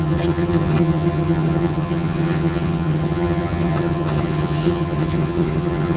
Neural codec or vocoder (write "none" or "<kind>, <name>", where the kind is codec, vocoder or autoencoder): vocoder, HiFi-GAN